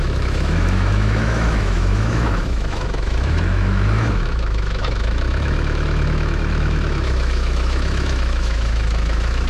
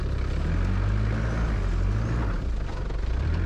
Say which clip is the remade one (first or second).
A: first